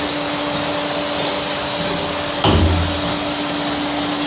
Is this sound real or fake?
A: real